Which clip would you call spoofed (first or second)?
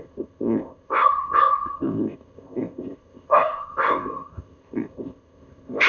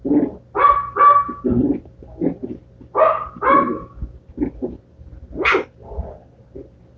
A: first